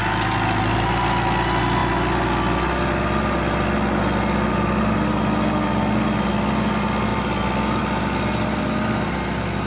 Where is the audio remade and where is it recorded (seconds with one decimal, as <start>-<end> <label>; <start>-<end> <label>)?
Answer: 0.0-9.7 recorded